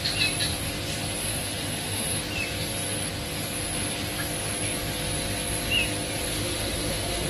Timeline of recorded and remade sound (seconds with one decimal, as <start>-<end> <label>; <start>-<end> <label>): 0.0-1.2 recorded; 1.2-2.2 remade; 2.2-6.3 recorded; 6.3-7.3 remade